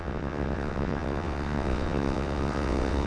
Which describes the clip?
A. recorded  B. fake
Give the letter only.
B